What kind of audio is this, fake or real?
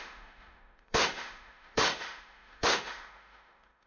fake